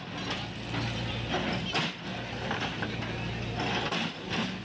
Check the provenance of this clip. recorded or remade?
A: recorded